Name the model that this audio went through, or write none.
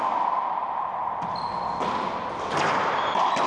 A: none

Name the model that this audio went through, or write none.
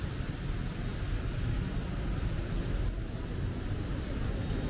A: none